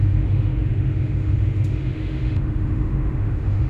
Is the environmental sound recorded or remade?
remade